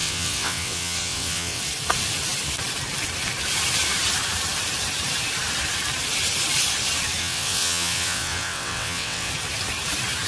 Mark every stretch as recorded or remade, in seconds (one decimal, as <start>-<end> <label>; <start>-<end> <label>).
0.0-1.6 remade; 1.6-7.2 recorded; 7.2-9.3 remade; 9.3-10.3 recorded

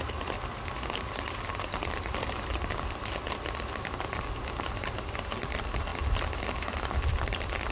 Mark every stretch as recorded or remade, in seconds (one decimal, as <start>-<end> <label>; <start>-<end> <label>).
0.0-7.7 recorded

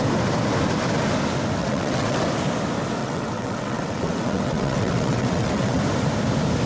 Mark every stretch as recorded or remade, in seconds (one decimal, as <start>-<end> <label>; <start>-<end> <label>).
0.0-1.6 recorded; 1.6-2.2 remade; 2.2-3.0 recorded; 3.0-5.8 remade; 5.8-6.7 recorded

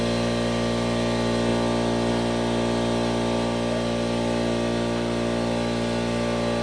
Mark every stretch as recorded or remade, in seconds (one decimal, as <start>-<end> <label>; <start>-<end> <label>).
0.0-6.6 recorded

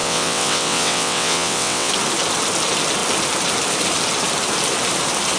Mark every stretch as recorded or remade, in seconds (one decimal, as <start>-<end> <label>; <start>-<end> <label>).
0.0-1.9 remade; 1.9-5.4 recorded

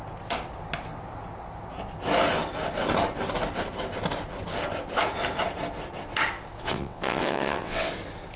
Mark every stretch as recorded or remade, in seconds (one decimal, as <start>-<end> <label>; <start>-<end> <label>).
0.0-6.6 recorded; 6.6-7.9 remade; 7.9-8.4 recorded

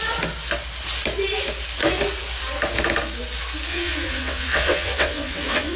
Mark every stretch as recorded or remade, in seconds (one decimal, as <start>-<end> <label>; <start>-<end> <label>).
0.0-3.7 recorded; 3.7-5.8 remade